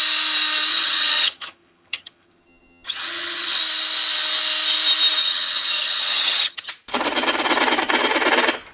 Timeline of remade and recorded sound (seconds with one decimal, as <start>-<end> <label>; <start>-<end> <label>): 0.0-0.7 recorded; 0.7-3.6 remade; 3.6-5.2 recorded; 5.2-6.7 remade; 6.7-8.7 recorded